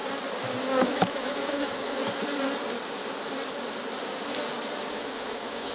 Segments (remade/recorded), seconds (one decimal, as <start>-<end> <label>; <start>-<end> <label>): 0.0-0.8 recorded; 0.8-2.0 remade; 2.0-4.9 recorded; 4.9-5.7 remade